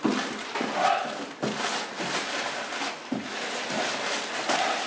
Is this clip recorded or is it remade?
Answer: recorded